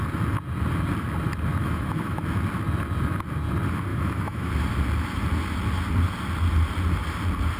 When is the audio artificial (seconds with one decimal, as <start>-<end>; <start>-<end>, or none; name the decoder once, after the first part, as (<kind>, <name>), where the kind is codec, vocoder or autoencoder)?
1.6-2.2 (autoencoder, DAC-VAE); 3.9-4.5